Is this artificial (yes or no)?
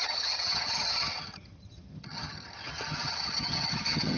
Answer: yes